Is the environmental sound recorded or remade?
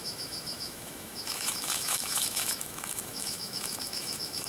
remade